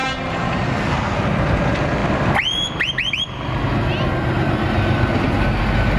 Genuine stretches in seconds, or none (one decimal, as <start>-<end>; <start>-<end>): 0.0-6.0

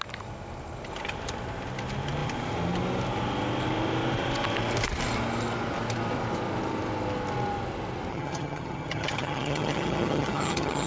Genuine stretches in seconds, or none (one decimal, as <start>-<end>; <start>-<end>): 0.0-8.1

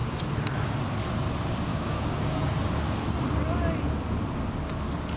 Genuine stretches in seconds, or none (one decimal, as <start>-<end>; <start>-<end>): 0.0-1.7; 2.5-5.2

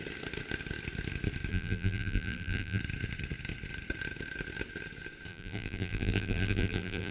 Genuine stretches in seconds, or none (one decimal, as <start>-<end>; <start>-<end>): 0.0-1.5; 2.8-5.3